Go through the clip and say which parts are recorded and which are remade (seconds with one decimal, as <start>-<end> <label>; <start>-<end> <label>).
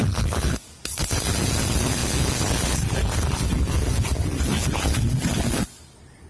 0.0-6.3 recorded